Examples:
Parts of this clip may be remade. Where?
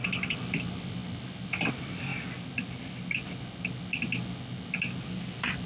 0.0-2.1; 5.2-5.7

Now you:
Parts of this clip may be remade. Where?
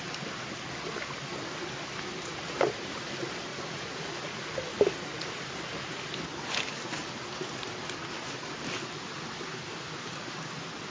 3.5-4.4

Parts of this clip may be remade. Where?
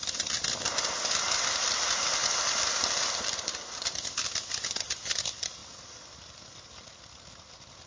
none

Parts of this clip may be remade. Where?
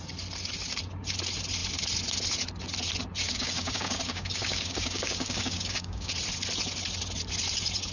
3.3-6.1